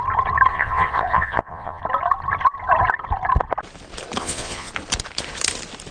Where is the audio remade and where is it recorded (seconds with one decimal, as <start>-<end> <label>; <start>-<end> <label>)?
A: 0.0-0.5 recorded; 0.5-1.8 remade; 1.8-4.2 recorded; 4.2-4.7 remade; 4.7-5.9 recorded